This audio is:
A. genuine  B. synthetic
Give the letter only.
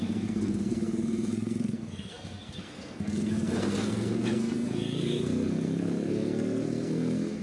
B